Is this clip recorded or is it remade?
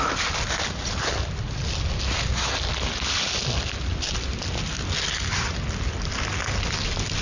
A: recorded